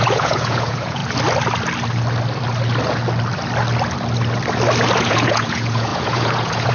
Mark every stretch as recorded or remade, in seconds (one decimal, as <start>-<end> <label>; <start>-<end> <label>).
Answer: 0.0-1.0 remade; 1.0-5.0 recorded; 5.0-6.7 remade